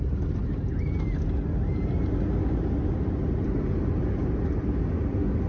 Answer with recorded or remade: recorded